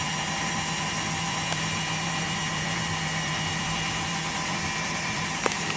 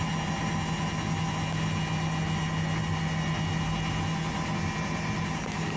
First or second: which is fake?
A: first